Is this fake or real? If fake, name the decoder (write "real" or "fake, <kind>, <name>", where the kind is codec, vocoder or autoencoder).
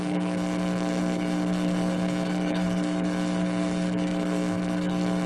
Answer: fake, codec, SNAC